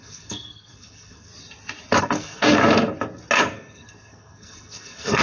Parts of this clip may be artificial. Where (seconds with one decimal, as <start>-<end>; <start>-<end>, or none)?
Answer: 0.0-1.3; 2.0-2.6; 3.4-5.2